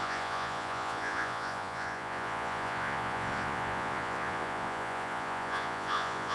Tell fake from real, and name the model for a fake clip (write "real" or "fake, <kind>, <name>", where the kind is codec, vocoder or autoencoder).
fake, vocoder, Vocos